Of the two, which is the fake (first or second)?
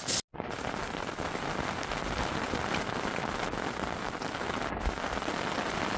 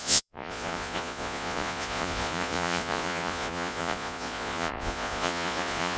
second